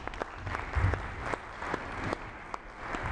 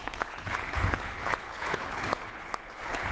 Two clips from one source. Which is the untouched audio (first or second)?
first